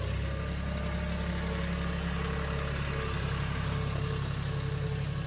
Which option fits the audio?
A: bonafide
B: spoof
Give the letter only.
A